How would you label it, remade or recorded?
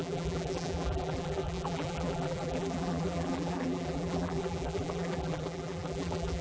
remade